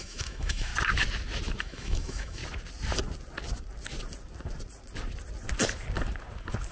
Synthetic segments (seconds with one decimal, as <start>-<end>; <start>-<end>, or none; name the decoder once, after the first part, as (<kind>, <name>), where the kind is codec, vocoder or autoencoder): 0.0-0.7 (autoencoder, DAC-VAE); 1.6-2.4

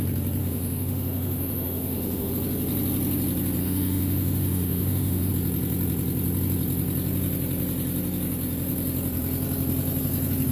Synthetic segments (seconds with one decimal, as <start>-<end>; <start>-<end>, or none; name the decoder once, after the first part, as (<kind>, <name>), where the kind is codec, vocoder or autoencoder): 0.4-2.3 (autoencoder, DAC-VAE); 3.6-5.3

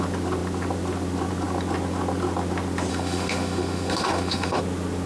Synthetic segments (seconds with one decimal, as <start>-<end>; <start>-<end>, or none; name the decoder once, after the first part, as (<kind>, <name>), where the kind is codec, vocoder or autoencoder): 2.9-4.6 (autoencoder, DAC-VAE)

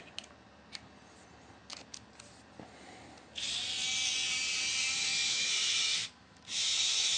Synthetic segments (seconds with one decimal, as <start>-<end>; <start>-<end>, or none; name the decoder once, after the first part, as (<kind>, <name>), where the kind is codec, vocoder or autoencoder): 5.3-7.2 (autoencoder, DAC-VAE)